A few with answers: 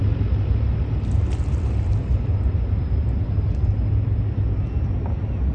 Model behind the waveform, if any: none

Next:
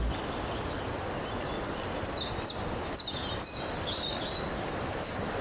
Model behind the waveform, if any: none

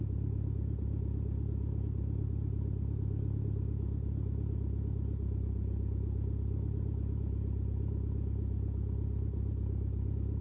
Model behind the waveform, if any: none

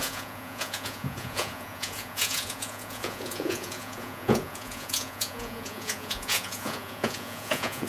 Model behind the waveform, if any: vocoder, Vocos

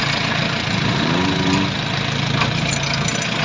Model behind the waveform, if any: none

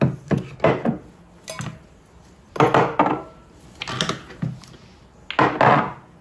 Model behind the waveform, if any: none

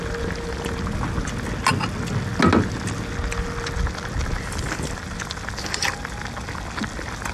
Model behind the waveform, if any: none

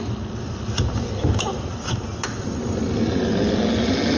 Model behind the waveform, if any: none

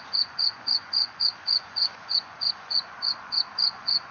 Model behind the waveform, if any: vocoder, Vocos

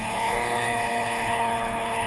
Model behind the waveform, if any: codec, HILCodec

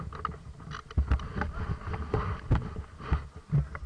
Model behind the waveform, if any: none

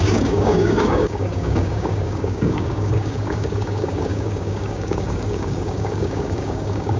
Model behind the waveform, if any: codec, DAC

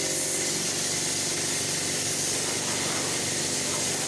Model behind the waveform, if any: none